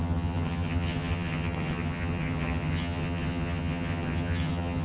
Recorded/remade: remade